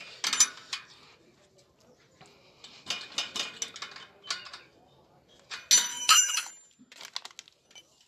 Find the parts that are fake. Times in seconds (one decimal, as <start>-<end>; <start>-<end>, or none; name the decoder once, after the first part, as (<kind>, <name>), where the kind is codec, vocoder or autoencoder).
5.9-6.5 (autoencoder, DAC-VAE)